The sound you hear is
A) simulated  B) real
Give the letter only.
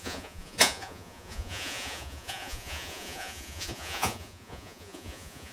A